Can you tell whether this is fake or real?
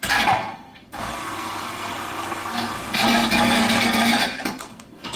fake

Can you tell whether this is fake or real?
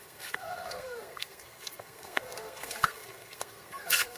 fake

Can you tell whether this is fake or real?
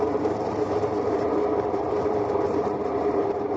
fake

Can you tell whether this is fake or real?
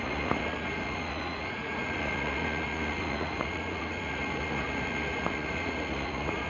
fake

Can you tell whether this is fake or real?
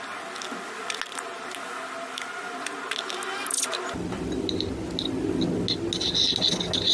real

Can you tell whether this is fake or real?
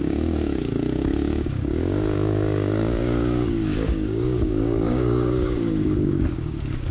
fake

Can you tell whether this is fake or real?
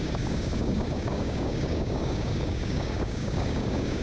fake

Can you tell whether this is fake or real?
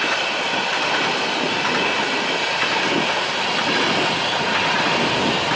real